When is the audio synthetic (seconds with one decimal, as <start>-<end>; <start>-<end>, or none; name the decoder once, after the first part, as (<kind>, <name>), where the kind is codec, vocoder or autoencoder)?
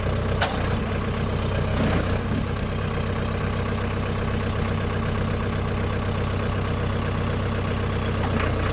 1.7-2.7 (codec, DAC)